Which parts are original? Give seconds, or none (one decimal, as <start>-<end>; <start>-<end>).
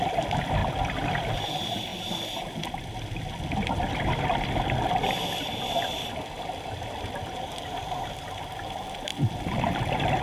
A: 0.6-1.1; 1.9-6.4; 9.1-10.2